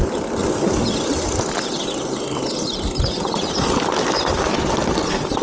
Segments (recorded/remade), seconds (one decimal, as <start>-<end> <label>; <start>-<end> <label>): 0.0-5.4 recorded

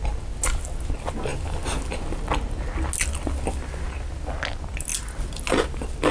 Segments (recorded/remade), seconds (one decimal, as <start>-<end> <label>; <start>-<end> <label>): 0.0-6.1 recorded

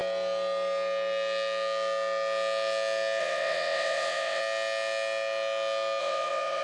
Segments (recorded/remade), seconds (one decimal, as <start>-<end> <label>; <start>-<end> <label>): 0.0-3.2 recorded; 3.2-4.4 remade; 4.4-6.0 recorded; 6.0-6.6 remade

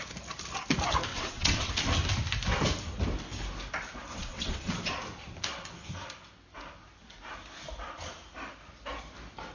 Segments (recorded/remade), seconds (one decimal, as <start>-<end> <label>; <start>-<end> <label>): 0.0-1.1 recorded; 1.1-1.7 remade; 1.7-4.1 recorded; 4.1-4.7 remade; 4.7-9.5 recorded

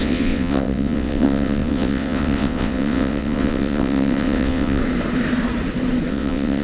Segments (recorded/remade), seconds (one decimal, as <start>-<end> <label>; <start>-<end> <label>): 0.0-4.8 remade; 4.8-6.1 recorded; 6.1-6.6 remade

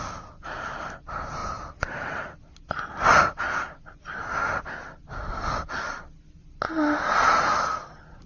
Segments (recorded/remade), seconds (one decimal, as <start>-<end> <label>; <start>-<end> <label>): 0.0-8.3 recorded